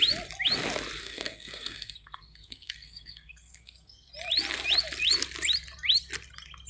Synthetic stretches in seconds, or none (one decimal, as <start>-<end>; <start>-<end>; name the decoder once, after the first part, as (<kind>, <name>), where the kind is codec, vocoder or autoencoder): 1.0-4.1 (codec, SNAC)